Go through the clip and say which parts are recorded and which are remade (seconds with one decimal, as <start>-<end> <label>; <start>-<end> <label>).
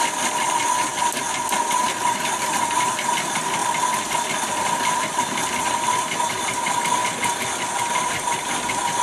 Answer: 0.0-0.9 remade; 0.9-1.8 recorded; 1.8-9.0 remade